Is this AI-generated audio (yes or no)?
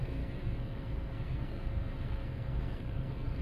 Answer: yes